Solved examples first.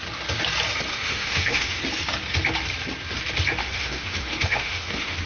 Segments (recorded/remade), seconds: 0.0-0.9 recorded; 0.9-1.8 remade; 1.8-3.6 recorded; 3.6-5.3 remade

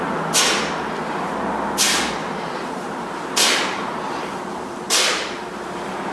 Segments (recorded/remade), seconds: 0.0-2.2 recorded; 2.2-6.1 remade

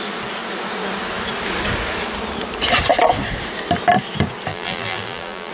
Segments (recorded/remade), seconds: 0.0-4.5 recorded; 4.5-5.5 remade